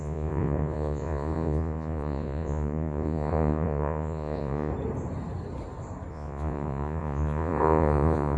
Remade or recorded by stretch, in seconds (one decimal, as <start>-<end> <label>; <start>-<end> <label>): 0.0-4.7 remade; 4.7-6.1 recorded; 6.1-8.4 remade